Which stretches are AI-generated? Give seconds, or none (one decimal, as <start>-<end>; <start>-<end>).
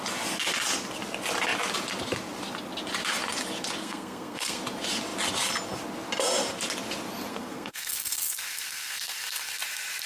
3.8-4.6; 7.3-9.6